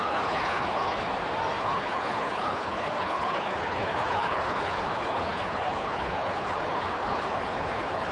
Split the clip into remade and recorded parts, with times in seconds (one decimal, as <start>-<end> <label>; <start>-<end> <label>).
0.0-1.1 remade; 1.1-1.6 recorded; 1.6-8.1 remade